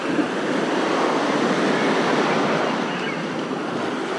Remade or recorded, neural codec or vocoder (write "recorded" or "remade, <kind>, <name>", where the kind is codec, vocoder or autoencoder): recorded